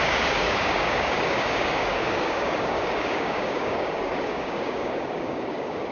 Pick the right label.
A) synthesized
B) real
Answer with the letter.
A